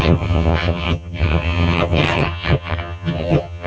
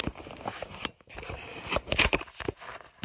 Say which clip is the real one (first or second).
second